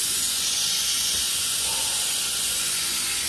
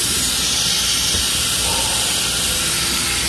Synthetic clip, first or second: first